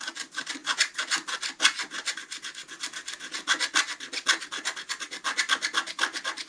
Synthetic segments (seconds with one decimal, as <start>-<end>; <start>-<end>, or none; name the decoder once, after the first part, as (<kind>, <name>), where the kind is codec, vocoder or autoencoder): none